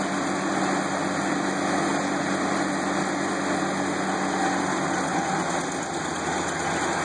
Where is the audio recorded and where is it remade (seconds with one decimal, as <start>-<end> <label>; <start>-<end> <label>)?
0.0-7.0 recorded